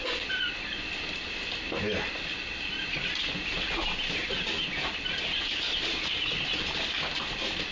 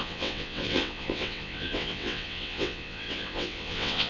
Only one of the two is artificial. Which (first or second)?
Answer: second